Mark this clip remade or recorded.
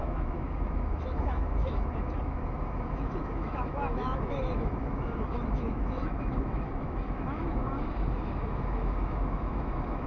remade